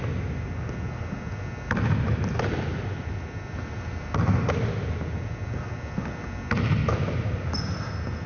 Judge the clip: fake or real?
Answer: real